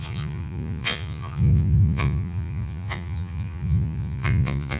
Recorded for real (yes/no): no